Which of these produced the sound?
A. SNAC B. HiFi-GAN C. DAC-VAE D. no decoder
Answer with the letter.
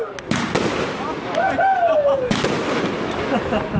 D